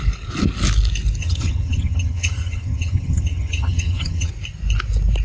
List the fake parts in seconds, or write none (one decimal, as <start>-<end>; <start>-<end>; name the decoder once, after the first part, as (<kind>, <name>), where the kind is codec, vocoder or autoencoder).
1.2-4.3 (vocoder, HiFi-GAN)